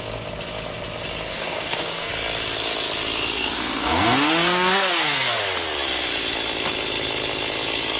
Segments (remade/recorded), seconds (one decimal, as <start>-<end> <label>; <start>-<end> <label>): 0.0-1.3 recorded; 1.3-2.1 remade; 2.1-3.2 recorded; 3.2-5.4 remade; 5.4-8.0 recorded